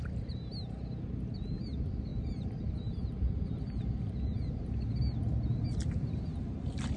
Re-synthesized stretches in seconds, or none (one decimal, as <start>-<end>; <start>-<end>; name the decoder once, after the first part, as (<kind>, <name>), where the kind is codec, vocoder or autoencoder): none